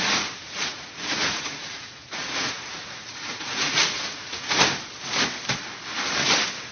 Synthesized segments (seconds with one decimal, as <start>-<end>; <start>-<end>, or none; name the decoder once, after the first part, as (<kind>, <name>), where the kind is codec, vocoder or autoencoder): 0.4-4.4 (vocoder, Vocos)

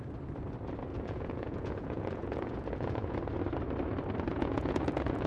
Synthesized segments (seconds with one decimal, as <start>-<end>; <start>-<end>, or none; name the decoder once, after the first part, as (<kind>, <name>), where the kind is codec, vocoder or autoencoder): 0.9-3.2 (vocoder, Vocos); 4.3-5.3

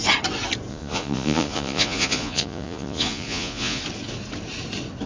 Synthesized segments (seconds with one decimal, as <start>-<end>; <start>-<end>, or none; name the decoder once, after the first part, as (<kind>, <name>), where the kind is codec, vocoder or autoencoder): 0.7-3.8 (vocoder, Vocos)

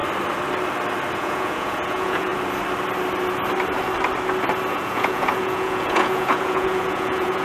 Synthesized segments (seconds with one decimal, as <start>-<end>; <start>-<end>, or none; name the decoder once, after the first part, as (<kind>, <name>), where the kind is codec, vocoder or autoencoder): 1.2-2.3 (vocoder, Vocos); 4.7-7.4

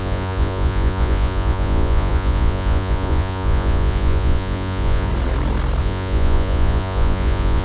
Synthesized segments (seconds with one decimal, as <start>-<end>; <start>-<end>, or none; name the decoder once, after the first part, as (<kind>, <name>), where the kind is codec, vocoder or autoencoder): 0.0-5.1 (vocoder, Vocos); 5.8-7.6